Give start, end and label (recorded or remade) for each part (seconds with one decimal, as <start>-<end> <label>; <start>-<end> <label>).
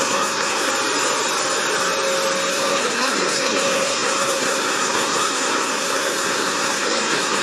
0.0-0.7 remade; 0.7-2.5 recorded; 2.5-7.4 remade